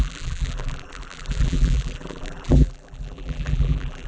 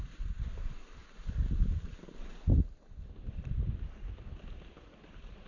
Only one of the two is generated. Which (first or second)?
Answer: first